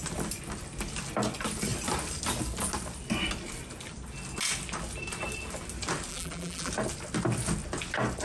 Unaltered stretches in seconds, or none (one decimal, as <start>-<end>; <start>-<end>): 0.0-6.1; 6.7-8.2